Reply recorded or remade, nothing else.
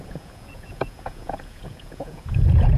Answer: remade